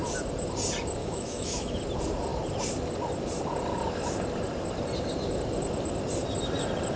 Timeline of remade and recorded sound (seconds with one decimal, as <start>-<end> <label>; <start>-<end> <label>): 0.0-1.0 recorded; 1.0-1.8 remade; 1.8-7.0 recorded